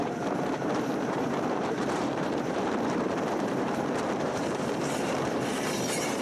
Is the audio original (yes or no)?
no